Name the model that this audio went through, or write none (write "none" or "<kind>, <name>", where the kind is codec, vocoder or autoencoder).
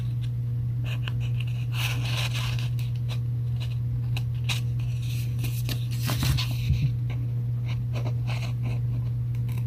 none